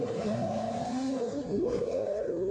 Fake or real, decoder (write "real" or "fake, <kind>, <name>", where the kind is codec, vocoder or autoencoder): fake, codec, SNAC